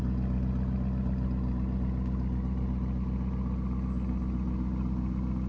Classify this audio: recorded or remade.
recorded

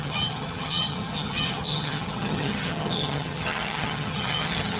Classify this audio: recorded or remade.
remade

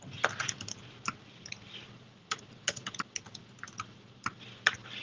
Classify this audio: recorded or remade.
recorded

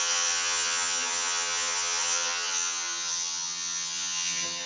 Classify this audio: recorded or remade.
remade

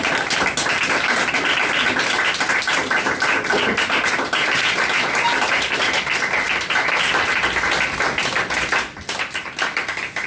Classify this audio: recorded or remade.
recorded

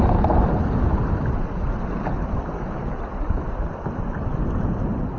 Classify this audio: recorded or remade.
recorded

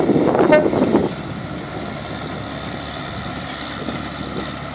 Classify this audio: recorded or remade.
recorded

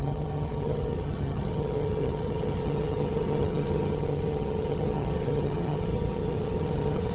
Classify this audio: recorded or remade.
remade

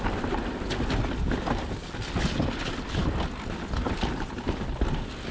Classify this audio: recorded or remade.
recorded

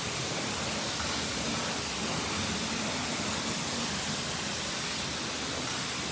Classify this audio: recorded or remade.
recorded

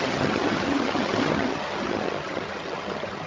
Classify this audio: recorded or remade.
remade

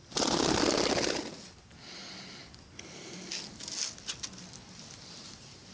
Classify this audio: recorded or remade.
recorded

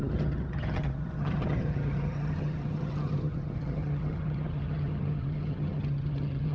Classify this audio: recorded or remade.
remade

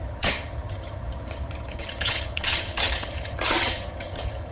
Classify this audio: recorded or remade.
remade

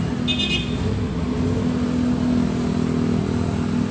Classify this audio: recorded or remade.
recorded